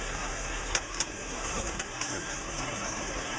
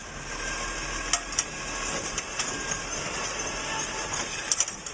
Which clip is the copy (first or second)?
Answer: first